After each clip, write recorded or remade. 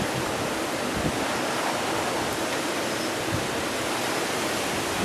recorded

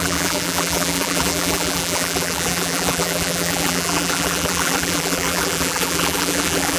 remade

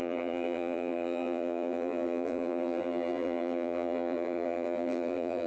remade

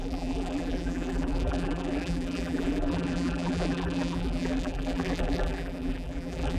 remade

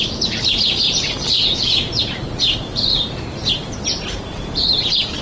remade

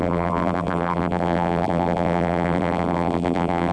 remade